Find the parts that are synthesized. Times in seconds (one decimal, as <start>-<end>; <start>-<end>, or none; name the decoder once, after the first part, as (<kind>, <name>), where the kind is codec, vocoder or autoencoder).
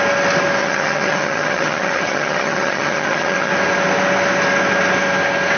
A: 0.6-3.5 (vocoder, HiFi-GAN)